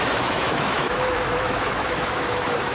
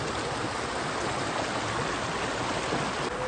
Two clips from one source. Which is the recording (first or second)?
second